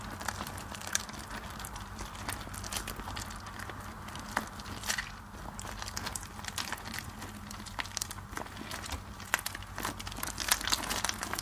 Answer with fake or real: real